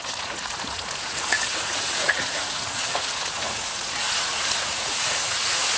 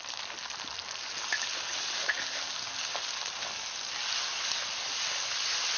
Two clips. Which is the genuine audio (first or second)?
second